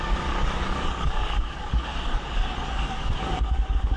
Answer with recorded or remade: remade